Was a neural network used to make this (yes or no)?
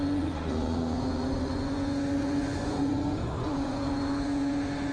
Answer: yes